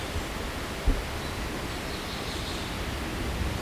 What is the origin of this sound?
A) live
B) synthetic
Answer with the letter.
A